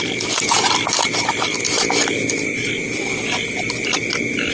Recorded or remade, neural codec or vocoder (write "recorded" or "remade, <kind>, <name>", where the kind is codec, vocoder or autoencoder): recorded